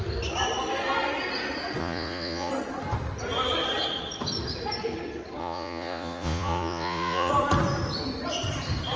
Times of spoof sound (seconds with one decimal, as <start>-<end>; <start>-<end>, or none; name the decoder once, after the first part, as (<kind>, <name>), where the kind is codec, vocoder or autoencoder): 1.8-2.5 (vocoder, Vocos); 5.4-7.3